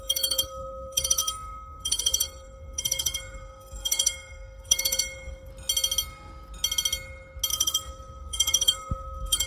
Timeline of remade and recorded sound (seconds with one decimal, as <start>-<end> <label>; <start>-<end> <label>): 0.0-5.5 remade; 5.5-7.5 recorded; 7.5-9.5 remade